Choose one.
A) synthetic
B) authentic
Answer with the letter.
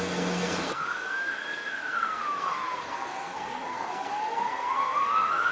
A